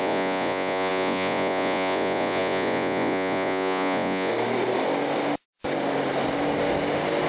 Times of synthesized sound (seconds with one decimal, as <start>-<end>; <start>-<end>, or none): 0.0-4.3